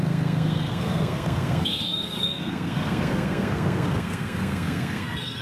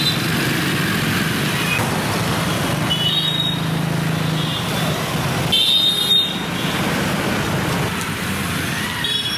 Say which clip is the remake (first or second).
first